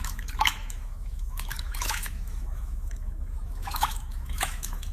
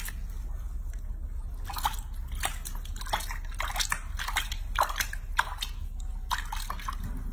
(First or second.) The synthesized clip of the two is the first